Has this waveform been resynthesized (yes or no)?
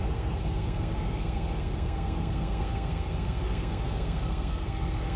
yes